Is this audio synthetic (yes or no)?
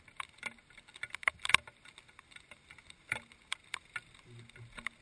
no